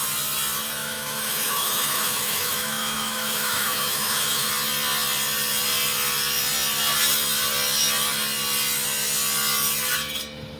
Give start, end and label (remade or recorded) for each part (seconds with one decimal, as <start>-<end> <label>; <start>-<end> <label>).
0.0-0.8 recorded; 0.8-4.5 remade; 4.5-10.6 recorded

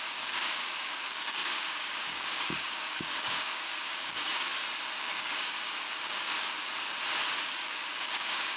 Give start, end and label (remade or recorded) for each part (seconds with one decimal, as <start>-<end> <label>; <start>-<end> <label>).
0.0-4.5 remade; 4.5-5.0 recorded; 5.0-6.7 remade; 6.7-7.4 recorded; 7.4-8.6 remade